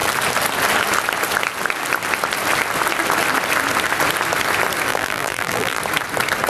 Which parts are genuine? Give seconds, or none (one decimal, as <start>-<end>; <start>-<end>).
0.0-4.9; 5.8-6.5